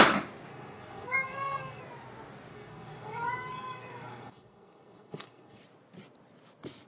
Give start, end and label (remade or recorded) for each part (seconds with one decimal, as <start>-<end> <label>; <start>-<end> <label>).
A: 0.0-0.5 recorded; 0.5-1.8 remade; 1.8-2.5 recorded; 2.5-5.6 remade; 5.6-6.9 recorded